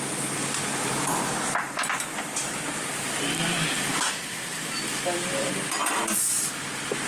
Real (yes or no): yes